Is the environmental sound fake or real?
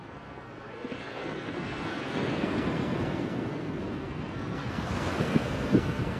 fake